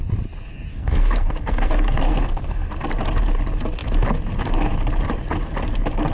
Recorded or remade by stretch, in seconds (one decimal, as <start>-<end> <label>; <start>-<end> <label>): 0.0-0.7 recorded; 0.7-2.7 remade; 2.7-6.1 recorded